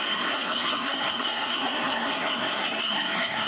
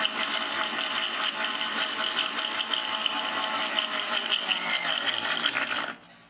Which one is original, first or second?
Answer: second